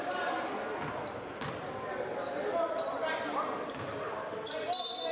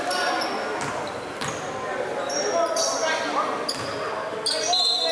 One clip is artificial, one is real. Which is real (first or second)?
second